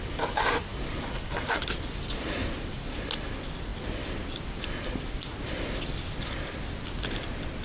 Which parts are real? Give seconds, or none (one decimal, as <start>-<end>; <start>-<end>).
0.0-7.6